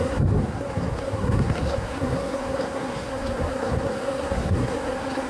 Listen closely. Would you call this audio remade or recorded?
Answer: remade